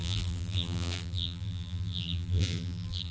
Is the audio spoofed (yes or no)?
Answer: yes